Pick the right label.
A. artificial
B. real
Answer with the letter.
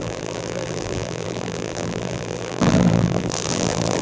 A